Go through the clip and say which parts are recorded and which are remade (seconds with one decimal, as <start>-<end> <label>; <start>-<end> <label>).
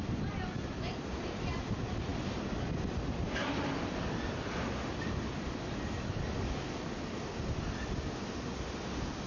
0.0-9.3 recorded